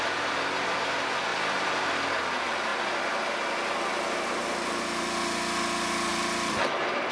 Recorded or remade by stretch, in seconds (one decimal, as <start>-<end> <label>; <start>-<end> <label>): 0.0-1.3 recorded; 1.3-2.2 remade; 2.2-6.1 recorded; 6.1-7.1 remade